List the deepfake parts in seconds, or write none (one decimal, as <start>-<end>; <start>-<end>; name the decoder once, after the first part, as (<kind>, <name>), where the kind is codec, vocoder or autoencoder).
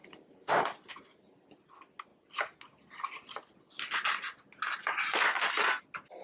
0.0-1.2 (vocoder, BigVGAN v2)